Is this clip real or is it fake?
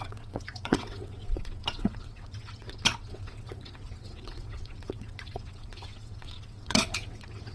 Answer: fake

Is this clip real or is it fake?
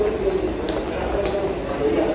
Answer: real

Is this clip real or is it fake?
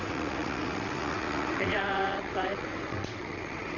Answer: fake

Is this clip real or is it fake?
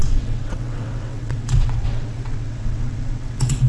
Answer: fake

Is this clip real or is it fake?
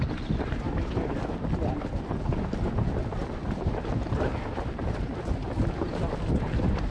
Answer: real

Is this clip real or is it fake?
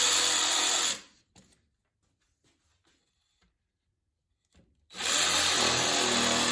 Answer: real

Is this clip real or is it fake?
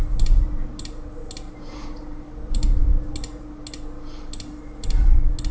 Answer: real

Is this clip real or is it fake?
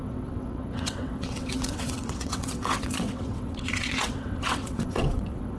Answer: fake